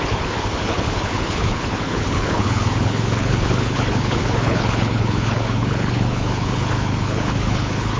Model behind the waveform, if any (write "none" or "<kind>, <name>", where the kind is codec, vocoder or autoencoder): codec, HILCodec